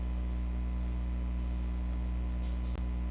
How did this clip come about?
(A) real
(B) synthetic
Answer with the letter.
A